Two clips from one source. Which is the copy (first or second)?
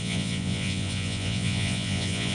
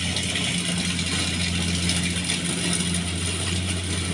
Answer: first